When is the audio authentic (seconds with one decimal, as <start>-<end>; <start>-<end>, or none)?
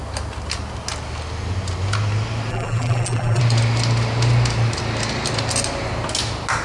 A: 0.0-2.5; 3.4-6.6